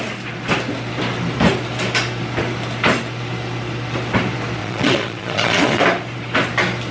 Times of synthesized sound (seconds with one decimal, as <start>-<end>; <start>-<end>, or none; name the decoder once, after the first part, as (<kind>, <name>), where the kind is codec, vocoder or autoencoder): 4.6-5.8 (vocoder, Vocos)